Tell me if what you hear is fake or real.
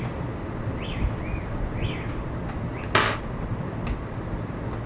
real